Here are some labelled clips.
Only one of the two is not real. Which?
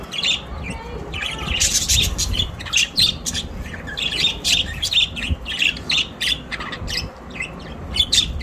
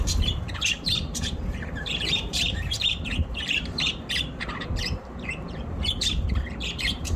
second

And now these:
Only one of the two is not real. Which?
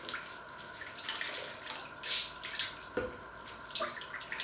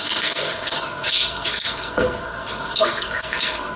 second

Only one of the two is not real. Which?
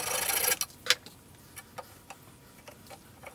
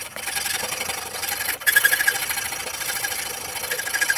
second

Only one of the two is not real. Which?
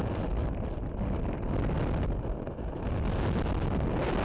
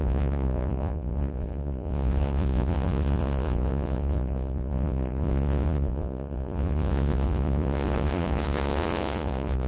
second